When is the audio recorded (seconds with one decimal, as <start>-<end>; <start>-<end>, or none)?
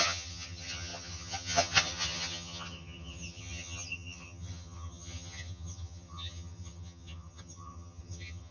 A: none